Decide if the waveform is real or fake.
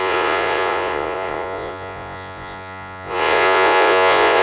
fake